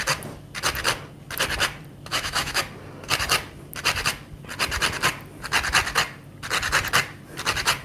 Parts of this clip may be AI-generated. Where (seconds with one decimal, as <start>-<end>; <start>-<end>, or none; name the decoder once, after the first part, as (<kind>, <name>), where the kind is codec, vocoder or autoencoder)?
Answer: 2.1-2.6 (autoencoder, DAC-VAE)